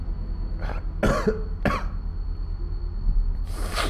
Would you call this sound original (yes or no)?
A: yes